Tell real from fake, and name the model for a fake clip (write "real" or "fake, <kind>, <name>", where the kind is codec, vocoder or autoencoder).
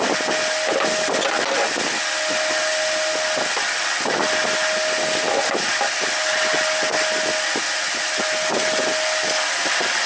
real